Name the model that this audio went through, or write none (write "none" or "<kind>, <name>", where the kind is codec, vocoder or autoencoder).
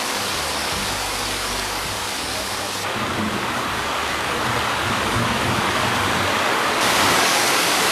codec, DAC